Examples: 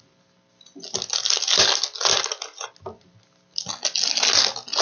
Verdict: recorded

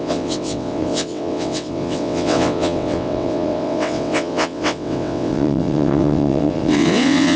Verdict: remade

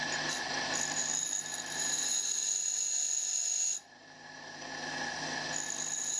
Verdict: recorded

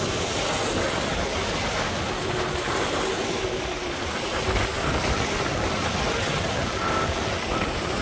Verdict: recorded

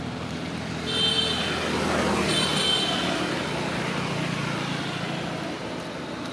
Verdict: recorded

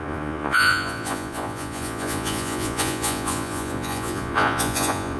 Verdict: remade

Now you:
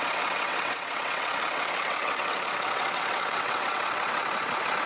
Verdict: remade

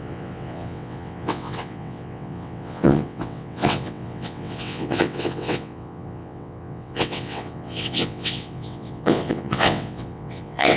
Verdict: remade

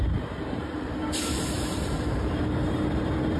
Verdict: remade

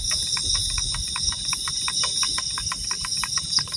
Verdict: recorded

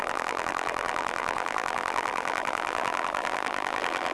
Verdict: remade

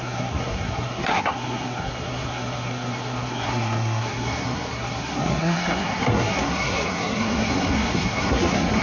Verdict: remade